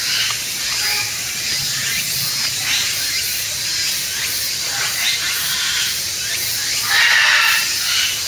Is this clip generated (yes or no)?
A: no